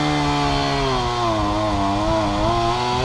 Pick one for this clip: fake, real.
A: real